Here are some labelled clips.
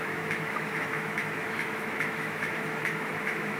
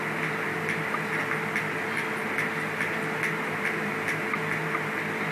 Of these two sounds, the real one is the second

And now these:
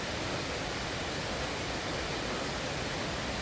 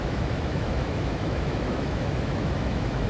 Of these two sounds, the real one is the first